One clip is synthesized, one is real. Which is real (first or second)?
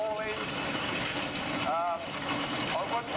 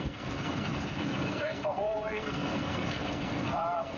first